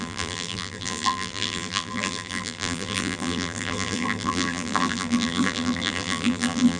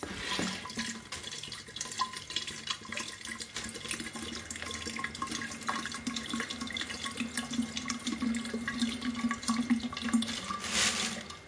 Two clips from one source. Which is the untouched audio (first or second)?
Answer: second